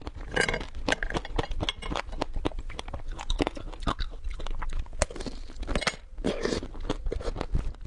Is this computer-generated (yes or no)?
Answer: no